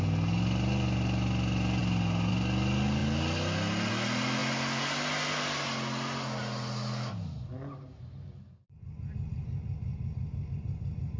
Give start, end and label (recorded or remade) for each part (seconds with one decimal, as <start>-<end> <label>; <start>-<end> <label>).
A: 0.0-11.2 recorded